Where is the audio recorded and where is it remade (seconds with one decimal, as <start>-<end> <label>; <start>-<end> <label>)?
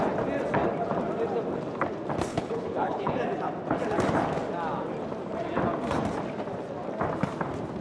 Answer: 0.0-2.3 recorded; 2.3-3.2 remade; 3.2-7.8 recorded